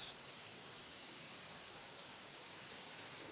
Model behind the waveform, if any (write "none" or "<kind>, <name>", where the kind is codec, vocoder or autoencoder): codec, DAC